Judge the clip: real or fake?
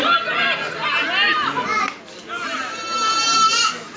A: real